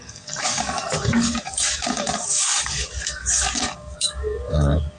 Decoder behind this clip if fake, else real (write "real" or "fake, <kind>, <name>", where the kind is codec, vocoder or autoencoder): fake, codec, DAC